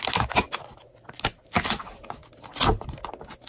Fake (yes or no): no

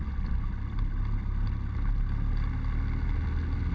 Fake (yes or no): no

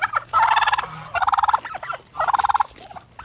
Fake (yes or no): yes